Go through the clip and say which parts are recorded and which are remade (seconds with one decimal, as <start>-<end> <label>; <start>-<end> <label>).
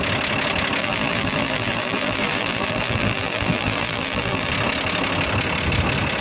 0.0-0.8 recorded; 0.8-4.5 remade; 4.5-6.2 recorded